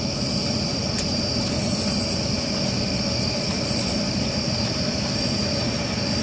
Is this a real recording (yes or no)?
yes